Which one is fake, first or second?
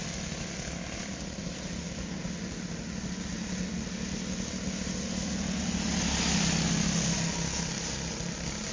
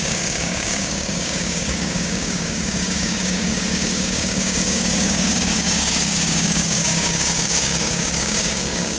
second